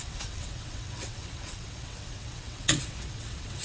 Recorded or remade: remade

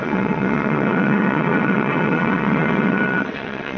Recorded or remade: remade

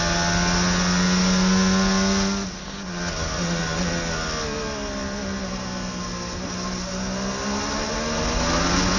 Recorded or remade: recorded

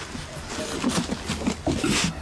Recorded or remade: recorded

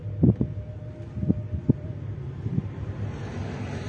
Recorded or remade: recorded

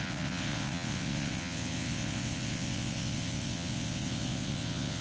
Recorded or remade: remade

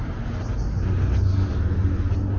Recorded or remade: recorded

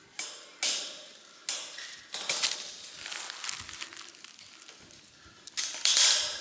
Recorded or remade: recorded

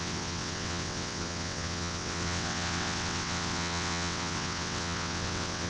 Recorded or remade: remade